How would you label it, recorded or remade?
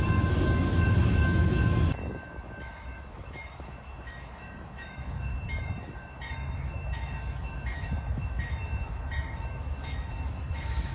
remade